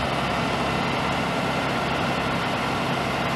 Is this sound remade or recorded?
recorded